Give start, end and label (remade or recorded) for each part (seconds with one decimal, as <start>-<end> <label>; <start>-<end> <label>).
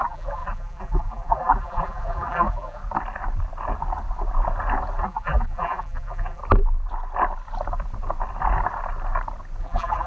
0.0-2.8 remade; 2.8-5.0 recorded; 5.0-6.4 remade; 6.4-9.6 recorded; 9.6-10.1 remade